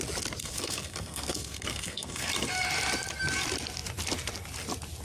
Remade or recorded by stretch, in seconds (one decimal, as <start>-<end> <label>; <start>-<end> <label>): 0.0-0.4 recorded; 0.4-2.3 remade; 2.3-5.0 recorded